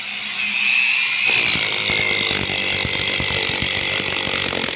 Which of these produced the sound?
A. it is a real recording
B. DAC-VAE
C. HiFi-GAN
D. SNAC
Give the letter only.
A